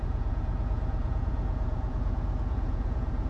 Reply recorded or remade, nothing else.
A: remade